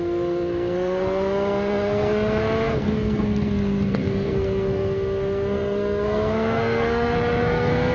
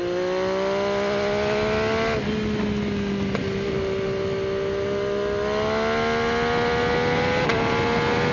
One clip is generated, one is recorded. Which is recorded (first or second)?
second